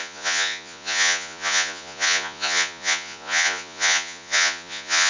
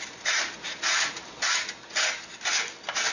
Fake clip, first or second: first